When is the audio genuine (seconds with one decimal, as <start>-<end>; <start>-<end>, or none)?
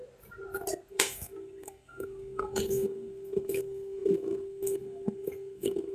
0.0-0.9